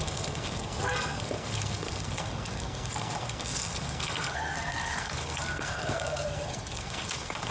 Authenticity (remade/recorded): remade